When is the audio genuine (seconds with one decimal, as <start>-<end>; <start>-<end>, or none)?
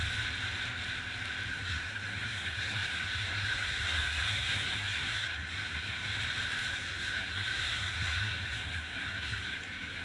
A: 0.0-1.5; 6.1-6.7